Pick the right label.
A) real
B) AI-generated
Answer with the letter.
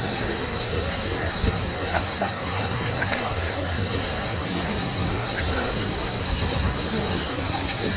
B